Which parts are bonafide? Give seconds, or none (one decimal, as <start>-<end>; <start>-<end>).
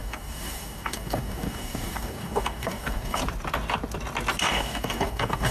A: 3.2-4.4